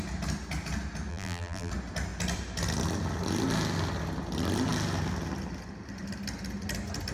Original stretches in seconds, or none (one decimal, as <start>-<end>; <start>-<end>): 0.0-1.1; 1.7-7.1